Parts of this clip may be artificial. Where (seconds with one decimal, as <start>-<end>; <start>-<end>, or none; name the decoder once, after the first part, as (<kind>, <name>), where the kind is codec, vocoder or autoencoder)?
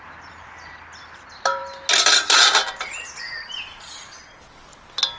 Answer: none